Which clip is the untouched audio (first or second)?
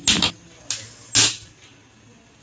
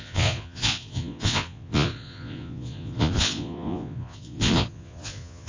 first